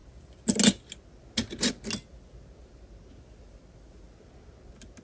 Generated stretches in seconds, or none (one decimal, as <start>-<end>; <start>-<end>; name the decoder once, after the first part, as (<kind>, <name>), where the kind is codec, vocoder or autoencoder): none